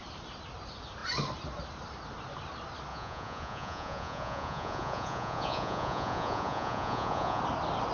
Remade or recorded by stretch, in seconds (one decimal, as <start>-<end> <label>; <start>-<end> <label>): 0.0-2.9 recorded; 2.9-7.4 remade; 7.4-7.9 recorded